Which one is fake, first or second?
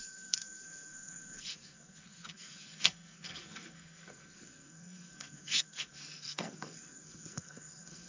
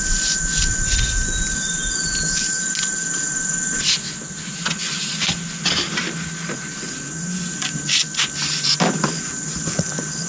first